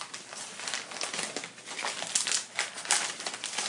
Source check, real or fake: real